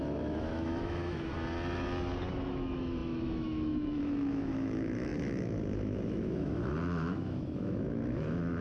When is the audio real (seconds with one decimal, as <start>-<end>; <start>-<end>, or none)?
1.3-2.5